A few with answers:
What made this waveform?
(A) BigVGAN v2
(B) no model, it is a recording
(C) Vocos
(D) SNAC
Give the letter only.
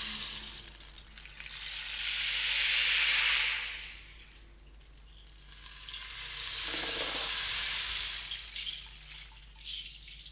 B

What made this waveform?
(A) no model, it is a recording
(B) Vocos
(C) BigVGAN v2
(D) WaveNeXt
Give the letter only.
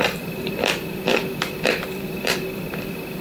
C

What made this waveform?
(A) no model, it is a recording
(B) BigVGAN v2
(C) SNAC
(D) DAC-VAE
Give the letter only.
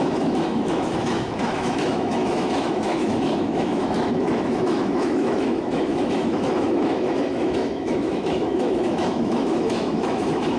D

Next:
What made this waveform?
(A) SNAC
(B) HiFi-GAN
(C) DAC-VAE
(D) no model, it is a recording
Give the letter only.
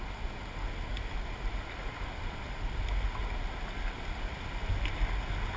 D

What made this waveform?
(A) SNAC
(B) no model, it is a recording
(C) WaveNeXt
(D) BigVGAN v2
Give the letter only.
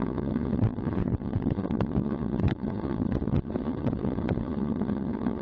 C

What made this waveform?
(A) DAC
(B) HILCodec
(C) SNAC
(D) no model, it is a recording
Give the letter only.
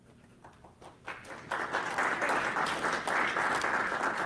D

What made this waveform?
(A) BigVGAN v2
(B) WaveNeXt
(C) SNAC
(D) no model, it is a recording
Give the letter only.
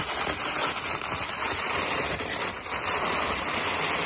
D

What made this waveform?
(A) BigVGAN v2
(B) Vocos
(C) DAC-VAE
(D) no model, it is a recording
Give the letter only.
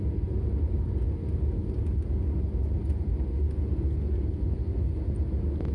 D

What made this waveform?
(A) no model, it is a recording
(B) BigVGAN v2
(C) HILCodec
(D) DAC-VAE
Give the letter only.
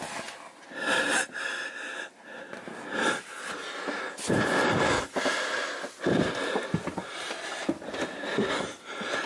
A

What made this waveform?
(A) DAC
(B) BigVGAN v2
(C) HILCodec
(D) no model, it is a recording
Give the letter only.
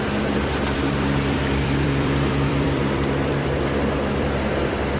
B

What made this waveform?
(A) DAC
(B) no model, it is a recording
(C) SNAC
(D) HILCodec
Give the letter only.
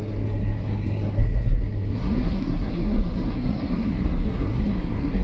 C